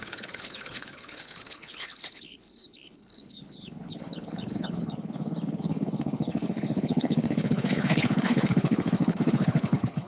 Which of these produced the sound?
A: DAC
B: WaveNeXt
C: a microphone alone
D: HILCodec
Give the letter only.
D